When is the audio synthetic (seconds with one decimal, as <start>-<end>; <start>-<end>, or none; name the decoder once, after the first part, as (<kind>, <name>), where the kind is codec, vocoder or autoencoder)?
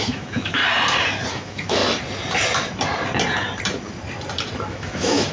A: 0.0-0.6 (autoencoder, DAC-VAE); 1.3-1.8; 4.7-5.3